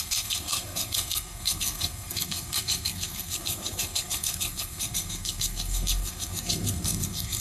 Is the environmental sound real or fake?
fake